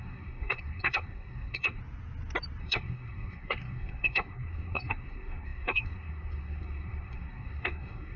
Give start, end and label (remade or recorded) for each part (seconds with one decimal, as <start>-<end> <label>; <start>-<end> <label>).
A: 0.0-1.8 remade; 1.8-2.6 recorded; 2.6-8.2 remade